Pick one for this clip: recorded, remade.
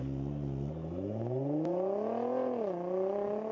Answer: recorded